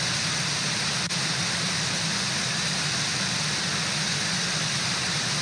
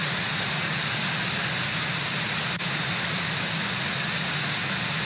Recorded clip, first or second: second